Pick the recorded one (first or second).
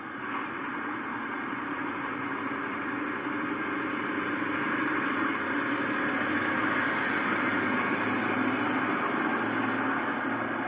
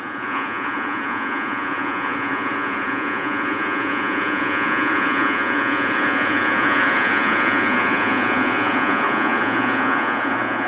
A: first